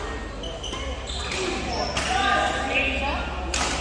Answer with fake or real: real